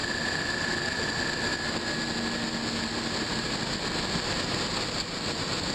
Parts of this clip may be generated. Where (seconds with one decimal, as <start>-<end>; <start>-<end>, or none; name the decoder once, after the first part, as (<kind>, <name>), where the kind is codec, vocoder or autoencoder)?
none